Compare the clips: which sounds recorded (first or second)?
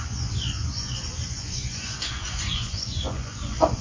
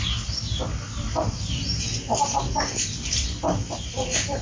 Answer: second